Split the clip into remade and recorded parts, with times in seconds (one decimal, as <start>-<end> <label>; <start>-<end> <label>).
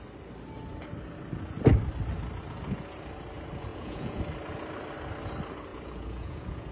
0.0-3.7 recorded; 3.7-4.2 remade; 4.2-5.7 recorded; 5.7-6.7 remade